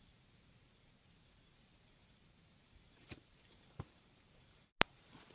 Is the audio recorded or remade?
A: remade